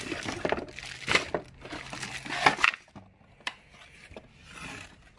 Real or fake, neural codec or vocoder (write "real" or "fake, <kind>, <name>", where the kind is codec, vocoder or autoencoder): real